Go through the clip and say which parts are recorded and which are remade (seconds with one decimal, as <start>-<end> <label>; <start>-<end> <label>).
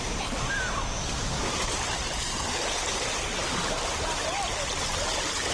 0.0-5.5 recorded